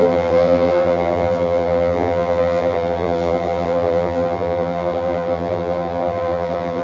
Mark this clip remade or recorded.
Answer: remade